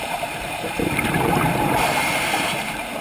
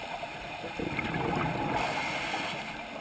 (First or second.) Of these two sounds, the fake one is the first